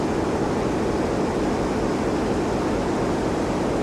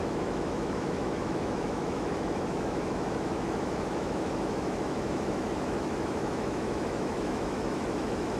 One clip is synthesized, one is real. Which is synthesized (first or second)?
second